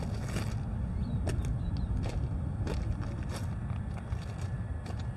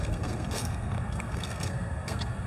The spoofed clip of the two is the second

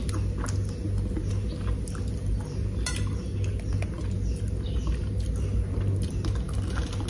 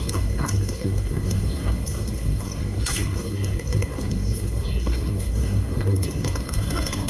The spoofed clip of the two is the second